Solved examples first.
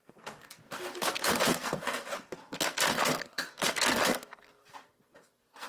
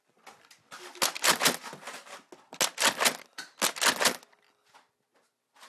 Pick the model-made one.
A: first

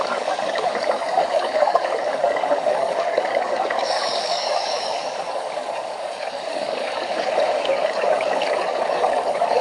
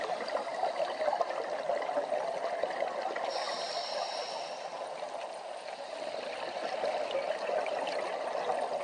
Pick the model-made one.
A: first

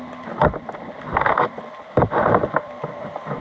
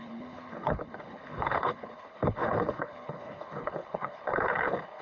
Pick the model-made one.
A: second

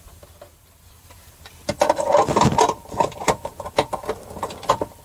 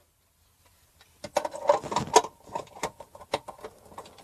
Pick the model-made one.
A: first